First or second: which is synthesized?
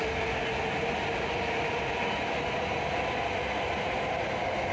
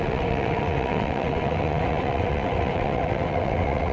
second